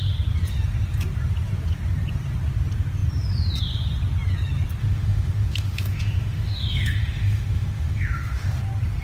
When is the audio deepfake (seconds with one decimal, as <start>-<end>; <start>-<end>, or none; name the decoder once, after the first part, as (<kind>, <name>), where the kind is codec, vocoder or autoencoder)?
4.8-8.6 (autoencoder, DAC-VAE)